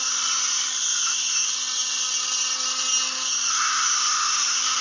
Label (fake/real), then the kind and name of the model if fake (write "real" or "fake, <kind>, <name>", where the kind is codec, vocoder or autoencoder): real